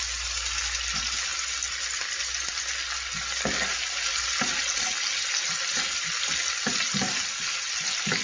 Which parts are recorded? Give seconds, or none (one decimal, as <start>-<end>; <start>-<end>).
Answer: 0.0-8.2